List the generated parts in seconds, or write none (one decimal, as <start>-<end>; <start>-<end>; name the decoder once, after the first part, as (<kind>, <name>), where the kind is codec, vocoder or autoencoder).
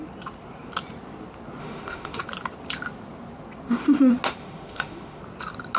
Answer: 1.6-2.2 (autoencoder, DAC-VAE); 4.4-5.2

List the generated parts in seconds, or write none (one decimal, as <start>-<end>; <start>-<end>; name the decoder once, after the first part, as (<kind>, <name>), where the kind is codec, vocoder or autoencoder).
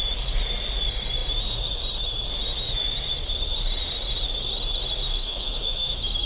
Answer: 5.0-6.3 (autoencoder, DAC-VAE)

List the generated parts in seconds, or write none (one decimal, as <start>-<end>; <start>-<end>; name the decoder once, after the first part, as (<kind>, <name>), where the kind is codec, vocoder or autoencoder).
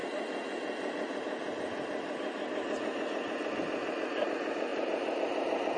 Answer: none